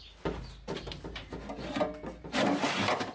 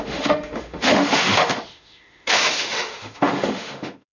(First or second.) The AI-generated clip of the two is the second